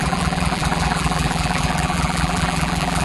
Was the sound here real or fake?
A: fake